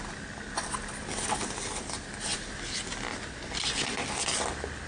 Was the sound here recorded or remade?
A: recorded